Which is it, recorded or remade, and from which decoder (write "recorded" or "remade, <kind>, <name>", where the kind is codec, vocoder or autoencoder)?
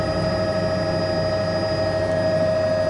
recorded